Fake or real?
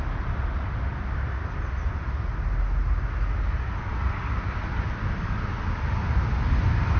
real